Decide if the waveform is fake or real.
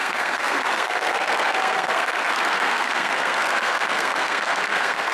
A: fake